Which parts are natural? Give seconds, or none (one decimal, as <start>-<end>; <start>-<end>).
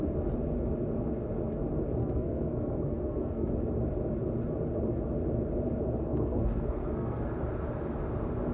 0.0-2.0; 3.5-6.1; 7.4-8.5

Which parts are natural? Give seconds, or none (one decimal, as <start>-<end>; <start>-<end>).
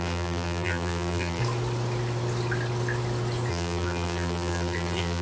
1.4-3.5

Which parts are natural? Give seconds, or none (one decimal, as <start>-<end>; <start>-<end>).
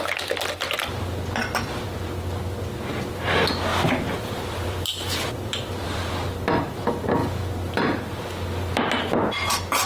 0.0-3.7; 6.1-9.9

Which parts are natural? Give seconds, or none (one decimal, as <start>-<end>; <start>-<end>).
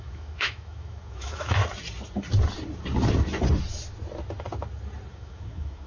1.6-5.1